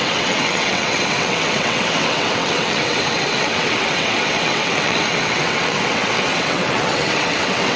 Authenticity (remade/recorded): remade